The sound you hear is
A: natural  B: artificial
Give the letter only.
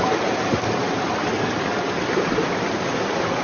A